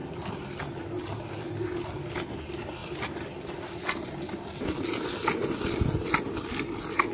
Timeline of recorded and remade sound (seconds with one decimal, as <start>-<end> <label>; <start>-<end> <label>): 0.0-7.1 recorded